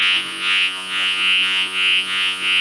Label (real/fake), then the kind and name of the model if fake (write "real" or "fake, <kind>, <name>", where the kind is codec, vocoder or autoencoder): fake, vocoder, Vocos